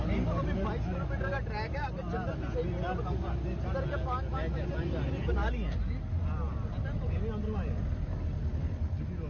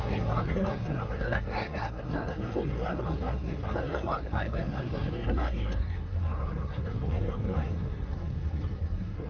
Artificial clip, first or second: second